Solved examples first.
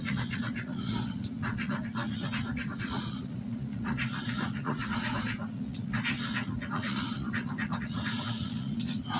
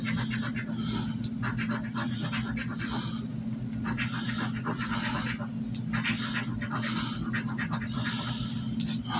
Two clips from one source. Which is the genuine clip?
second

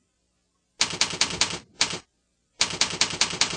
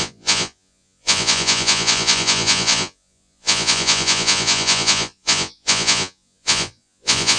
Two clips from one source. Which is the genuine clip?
first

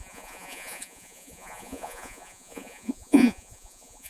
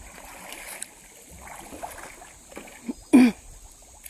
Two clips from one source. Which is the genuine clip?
second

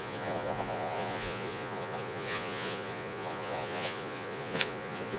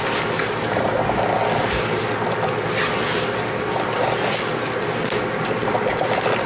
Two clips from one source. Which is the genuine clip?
second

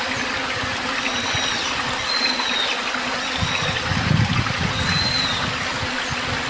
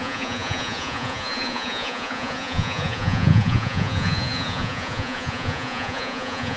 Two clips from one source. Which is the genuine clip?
first